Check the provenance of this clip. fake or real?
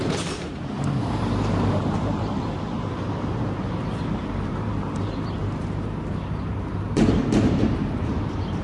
fake